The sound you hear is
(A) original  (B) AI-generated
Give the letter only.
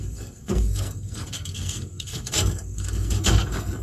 B